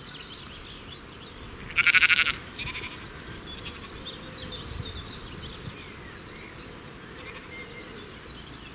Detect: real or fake real